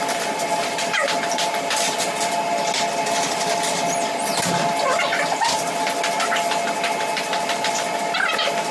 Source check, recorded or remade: recorded